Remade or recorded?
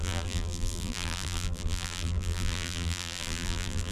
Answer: remade